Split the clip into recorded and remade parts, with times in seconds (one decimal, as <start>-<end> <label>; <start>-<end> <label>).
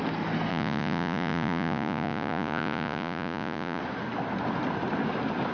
0.0-0.5 recorded; 0.5-3.8 remade; 3.8-5.5 recorded